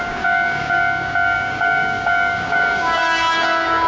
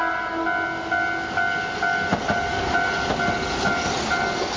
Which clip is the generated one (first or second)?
first